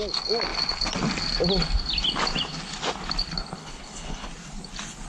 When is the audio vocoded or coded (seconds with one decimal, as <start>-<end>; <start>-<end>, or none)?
3.6-4.3